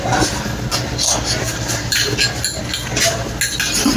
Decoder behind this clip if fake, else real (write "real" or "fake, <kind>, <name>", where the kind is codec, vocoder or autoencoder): real